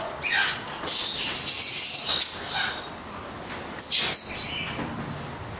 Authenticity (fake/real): real